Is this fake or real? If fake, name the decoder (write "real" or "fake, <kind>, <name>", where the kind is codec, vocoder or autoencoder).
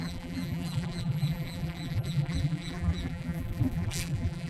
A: fake, vocoder, BigVGAN v2